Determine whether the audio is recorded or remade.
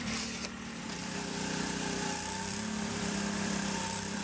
remade